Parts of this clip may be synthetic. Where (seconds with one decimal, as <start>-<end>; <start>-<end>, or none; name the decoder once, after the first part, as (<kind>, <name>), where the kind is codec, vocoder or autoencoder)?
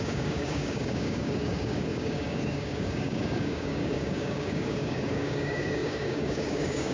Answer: 0.0-6.9 (codec, DAC)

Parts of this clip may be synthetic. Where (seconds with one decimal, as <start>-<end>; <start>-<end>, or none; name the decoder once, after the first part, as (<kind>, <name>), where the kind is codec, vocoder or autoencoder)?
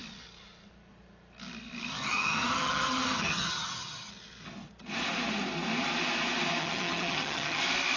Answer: 1.9-4.1 (vocoder, HiFi-GAN); 6.6-7.6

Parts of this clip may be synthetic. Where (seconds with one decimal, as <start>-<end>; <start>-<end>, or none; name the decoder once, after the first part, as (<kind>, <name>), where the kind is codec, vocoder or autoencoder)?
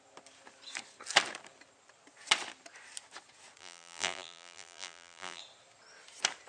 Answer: 3.6-5.4 (vocoder, BigVGAN v2)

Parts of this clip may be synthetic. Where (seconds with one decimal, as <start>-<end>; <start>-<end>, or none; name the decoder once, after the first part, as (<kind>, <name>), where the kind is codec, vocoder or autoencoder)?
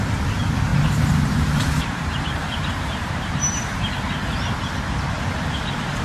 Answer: 0.7-3.9 (vocoder, BigVGAN v2)